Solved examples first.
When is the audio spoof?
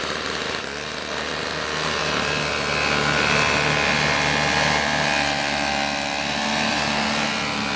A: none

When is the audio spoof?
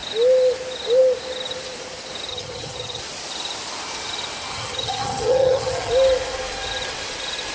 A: 2.3-3.0 (vocoder, HiFi-GAN); 4.5-5.9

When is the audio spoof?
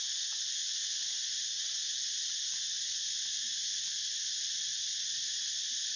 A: none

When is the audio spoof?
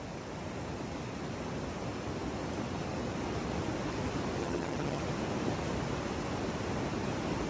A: 4.4-5.0 (vocoder, HiFi-GAN)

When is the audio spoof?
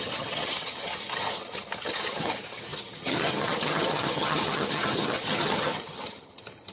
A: 0.0-6.7 (vocoder, HiFi-GAN)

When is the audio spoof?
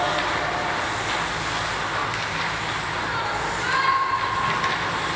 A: none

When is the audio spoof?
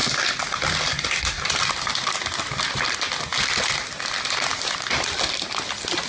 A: none